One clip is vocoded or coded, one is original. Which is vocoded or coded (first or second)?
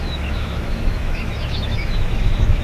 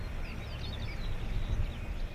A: first